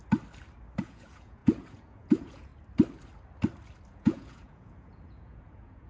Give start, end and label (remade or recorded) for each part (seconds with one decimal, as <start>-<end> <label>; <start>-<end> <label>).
0.0-0.8 recorded; 0.8-2.5 remade; 2.5-3.9 recorded; 3.9-5.9 remade